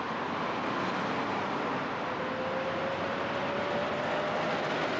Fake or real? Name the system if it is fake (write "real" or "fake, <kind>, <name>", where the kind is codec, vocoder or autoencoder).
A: real